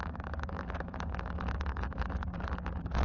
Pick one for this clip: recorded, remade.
remade